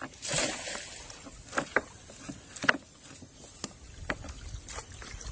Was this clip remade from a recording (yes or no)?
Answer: no